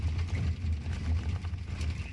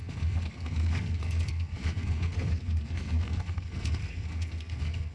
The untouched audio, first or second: first